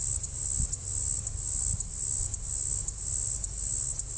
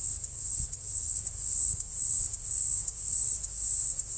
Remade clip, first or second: second